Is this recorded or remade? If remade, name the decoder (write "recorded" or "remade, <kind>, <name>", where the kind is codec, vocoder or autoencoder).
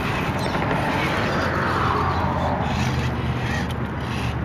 recorded